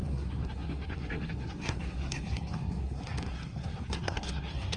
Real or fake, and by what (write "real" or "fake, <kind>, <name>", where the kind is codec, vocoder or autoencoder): fake, codec, SNAC